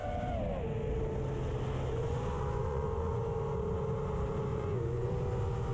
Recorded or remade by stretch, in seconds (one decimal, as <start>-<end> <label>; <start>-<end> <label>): 0.0-1.9 recorded; 1.9-3.4 remade; 3.4-4.5 recorded; 4.5-5.1 remade; 5.1-5.7 recorded